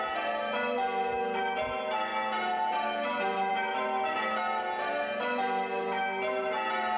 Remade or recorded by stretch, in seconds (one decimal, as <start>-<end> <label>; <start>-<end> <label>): 0.0-7.0 recorded